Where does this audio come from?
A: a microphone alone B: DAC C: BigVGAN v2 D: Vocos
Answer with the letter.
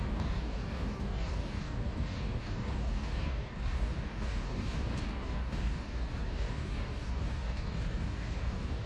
B